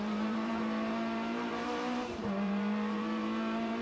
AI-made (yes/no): yes